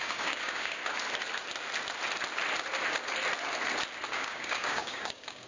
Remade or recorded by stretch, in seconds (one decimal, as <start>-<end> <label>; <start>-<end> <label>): 0.0-0.8 remade; 0.8-4.1 recorded; 4.1-5.5 remade